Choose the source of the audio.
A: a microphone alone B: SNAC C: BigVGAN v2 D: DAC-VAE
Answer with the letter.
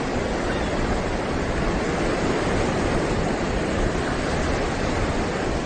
A